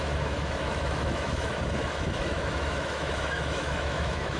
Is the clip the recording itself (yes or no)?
no